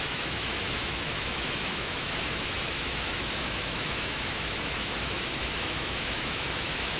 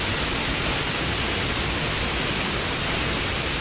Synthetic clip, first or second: first